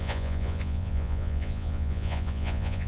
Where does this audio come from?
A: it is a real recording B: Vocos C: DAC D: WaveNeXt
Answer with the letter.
B